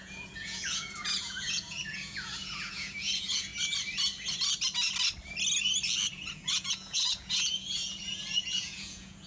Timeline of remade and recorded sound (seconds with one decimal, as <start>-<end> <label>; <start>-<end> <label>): 0.0-3.5 remade; 3.5-6.1 recorded; 6.1-9.3 remade